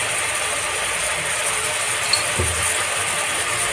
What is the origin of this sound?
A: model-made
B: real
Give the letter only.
B